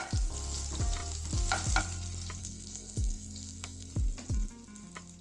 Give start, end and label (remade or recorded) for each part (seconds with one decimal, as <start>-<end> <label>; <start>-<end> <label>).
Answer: 0.0-2.4 recorded; 2.4-3.9 remade; 3.9-5.2 recorded